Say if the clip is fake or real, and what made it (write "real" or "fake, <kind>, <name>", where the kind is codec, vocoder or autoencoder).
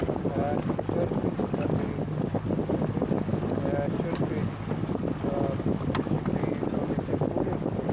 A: real